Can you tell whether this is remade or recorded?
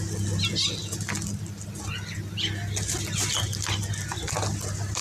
recorded